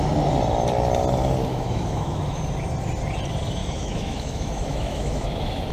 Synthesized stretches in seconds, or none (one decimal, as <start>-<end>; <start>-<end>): 1.5-2.4; 3.6-5.7

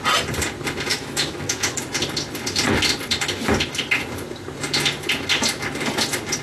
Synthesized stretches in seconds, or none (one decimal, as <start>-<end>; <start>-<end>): 0.9-1.8

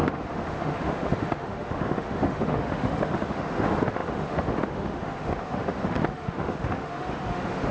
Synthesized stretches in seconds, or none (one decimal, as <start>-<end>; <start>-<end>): 0.0-7.7

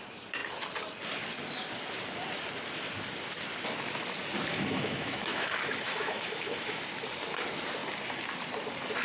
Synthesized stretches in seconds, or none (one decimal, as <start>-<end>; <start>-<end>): 4.5-6.8